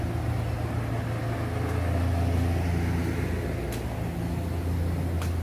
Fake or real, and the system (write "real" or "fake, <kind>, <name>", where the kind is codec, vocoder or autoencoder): real